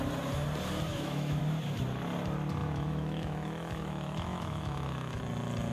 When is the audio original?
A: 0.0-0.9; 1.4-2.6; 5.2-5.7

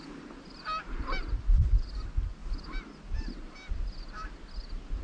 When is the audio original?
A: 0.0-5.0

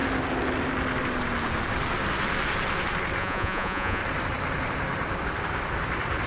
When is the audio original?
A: 0.0-3.2; 4.0-6.3

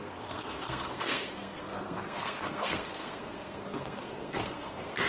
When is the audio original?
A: none

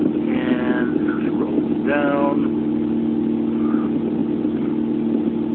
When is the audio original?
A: 0.0-5.5